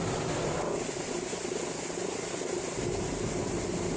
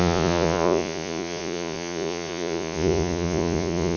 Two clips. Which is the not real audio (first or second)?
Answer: second